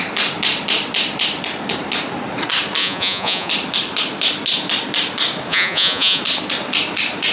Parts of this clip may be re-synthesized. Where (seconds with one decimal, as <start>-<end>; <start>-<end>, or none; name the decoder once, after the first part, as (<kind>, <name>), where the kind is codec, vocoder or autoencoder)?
2.8-3.5 (vocoder, Vocos); 5.5-6.2